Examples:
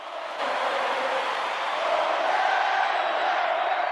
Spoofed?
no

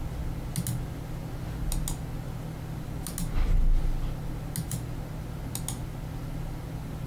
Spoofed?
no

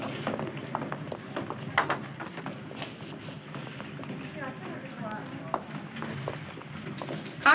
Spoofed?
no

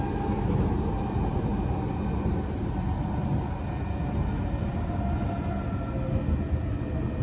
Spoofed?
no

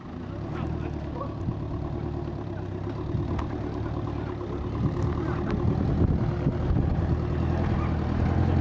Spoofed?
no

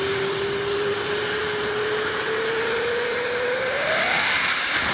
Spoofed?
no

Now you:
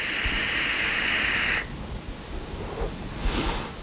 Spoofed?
no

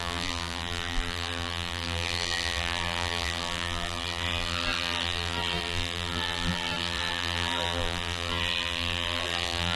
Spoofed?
yes